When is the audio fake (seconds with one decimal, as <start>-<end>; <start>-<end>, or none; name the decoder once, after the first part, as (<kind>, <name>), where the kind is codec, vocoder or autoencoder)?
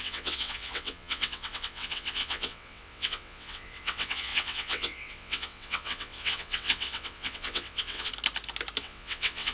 0.0-8.1 (vocoder, WaveNeXt); 8.8-9.5